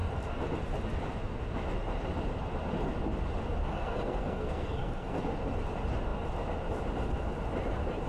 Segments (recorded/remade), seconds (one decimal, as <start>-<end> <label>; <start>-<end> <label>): 0.0-3.6 recorded; 3.6-5.2 remade; 5.2-8.1 recorded